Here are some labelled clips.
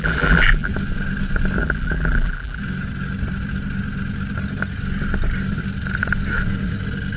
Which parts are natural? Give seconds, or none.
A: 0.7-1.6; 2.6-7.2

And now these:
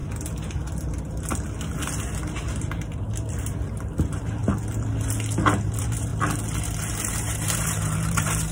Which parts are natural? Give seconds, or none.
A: 0.0-2.6; 4.4-5.6; 6.1-7.1

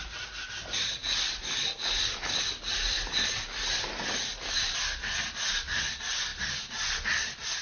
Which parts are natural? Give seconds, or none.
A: 0.0-7.6

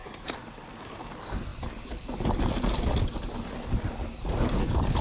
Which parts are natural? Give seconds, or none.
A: 0.7-1.5; 3.0-5.0

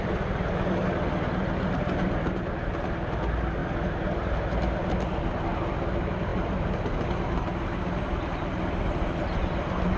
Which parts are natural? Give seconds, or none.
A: 0.0-10.0

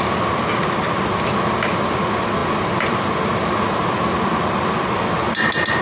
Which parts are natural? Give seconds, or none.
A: 0.0-5.8